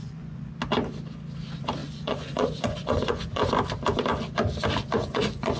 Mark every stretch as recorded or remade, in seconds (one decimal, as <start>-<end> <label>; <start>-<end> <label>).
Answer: 0.0-0.5 remade; 0.5-1.8 recorded; 1.8-3.5 remade; 3.5-5.0 recorded; 5.0-5.6 remade